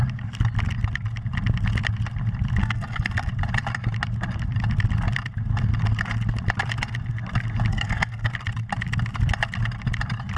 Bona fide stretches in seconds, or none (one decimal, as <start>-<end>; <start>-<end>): 0.0-2.6; 3.3-7.7; 8.3-10.4